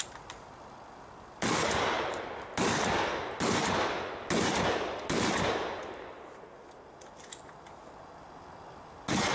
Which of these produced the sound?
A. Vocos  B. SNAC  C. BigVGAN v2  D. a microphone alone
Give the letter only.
D